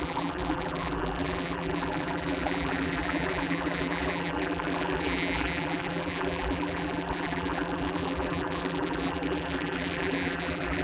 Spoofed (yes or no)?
yes